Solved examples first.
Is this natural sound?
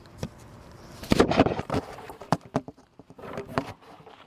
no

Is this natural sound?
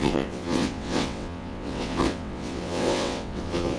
no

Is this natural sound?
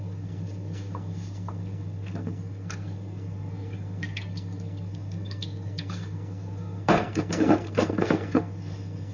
no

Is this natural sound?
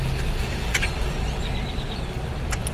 yes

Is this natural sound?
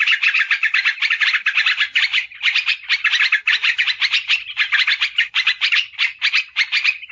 no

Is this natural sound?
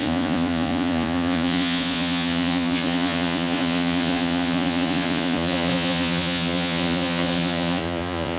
no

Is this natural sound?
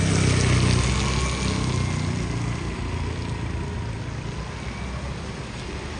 yes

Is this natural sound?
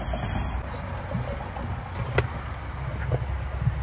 yes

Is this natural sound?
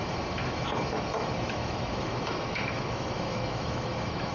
no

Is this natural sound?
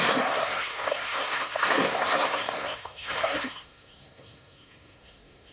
no